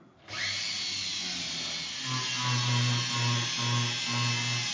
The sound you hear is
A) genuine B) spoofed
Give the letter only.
A